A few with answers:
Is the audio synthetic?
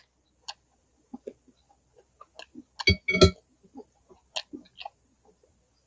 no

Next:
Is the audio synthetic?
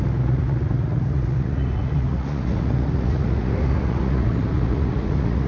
yes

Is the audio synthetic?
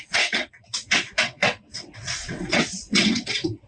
yes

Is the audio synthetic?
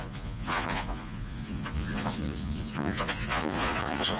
yes